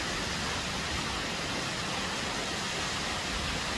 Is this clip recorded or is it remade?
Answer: recorded